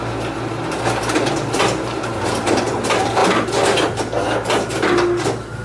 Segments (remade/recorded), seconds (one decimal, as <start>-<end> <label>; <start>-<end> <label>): 0.0-5.6 recorded